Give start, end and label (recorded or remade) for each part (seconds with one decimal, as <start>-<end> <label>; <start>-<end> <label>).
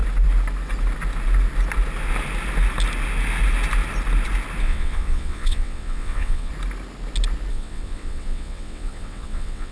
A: 0.0-4.6 recorded; 4.6-6.5 remade; 6.5-7.5 recorded; 7.5-9.7 remade